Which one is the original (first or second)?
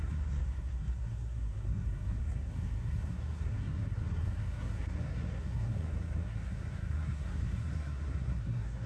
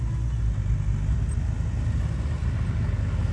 second